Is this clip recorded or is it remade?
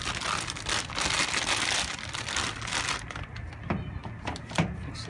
recorded